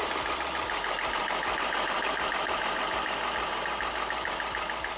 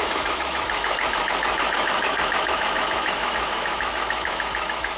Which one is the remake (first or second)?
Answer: second